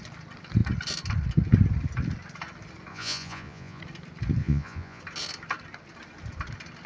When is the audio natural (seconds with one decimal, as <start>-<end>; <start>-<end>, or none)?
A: 0.0-2.9; 3.8-4.4; 5.0-6.9